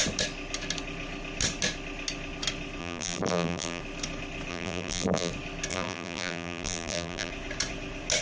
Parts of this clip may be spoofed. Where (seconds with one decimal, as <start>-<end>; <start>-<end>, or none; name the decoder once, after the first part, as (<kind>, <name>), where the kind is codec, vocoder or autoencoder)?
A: 2.8-3.8 (vocoder, BigVGAN v2); 4.5-5.3; 5.7-7.3